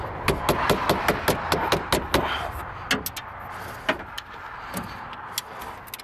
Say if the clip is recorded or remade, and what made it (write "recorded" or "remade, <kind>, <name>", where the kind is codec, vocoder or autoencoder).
recorded